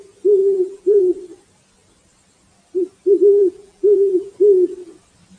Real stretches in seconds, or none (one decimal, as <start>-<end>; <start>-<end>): 0.0-0.4; 1.2-3.4; 4.3-5.4